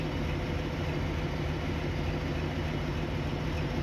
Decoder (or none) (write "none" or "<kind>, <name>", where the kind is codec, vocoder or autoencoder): none